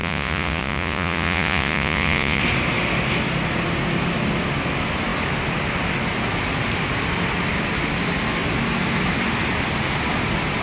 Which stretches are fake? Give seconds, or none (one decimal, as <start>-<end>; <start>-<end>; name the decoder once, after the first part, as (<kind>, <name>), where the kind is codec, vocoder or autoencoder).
0.0-2.4 (vocoder, Vocos)